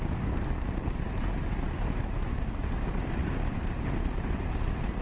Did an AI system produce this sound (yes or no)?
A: yes